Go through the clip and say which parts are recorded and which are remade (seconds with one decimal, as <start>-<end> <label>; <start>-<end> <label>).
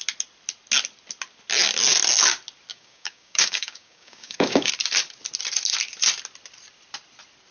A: 0.0-2.7 recorded; 2.7-4.7 remade; 4.7-7.5 recorded